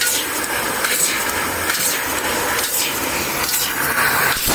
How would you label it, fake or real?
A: real